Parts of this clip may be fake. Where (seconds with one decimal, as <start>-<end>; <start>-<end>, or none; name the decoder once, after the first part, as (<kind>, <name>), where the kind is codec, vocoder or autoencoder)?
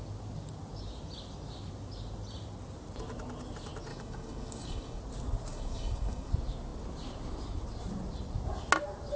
3.9-5.0 (codec, DAC); 5.5-6.3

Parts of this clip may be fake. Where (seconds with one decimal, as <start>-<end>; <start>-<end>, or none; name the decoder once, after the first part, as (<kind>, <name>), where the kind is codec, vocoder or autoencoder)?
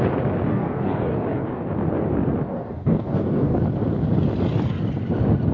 0.5-1.6 (codec, DAC); 2.5-3.6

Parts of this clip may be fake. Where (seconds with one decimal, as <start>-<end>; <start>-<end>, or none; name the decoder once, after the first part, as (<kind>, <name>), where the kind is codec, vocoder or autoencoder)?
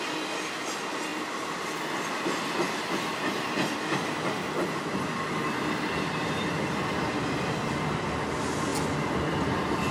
none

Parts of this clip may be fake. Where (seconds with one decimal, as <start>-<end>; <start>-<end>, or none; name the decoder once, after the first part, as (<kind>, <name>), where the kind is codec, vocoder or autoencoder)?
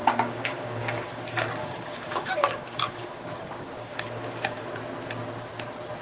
0.0-1.2 (codec, DAC); 1.6-4.7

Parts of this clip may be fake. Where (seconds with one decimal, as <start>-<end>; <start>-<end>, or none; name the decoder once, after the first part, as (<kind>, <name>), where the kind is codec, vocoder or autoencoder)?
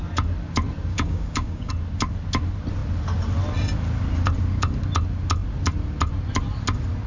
0.9-1.7 (codec, DAC)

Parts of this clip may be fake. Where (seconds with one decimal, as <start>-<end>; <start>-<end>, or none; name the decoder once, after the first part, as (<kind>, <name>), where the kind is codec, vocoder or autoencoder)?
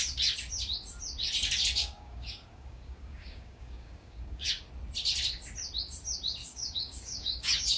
1.8-4.6 (codec, DAC); 6.4-7.8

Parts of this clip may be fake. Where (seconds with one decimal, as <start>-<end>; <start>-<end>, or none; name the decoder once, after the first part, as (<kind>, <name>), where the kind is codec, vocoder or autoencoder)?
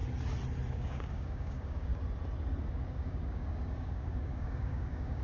0.7-1.9 (codec, DAC); 2.7-5.2